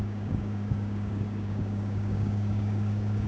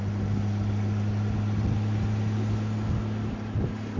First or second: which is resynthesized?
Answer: first